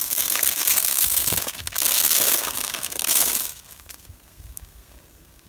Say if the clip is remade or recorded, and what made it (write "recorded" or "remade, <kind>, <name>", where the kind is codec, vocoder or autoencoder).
remade, codec, SNAC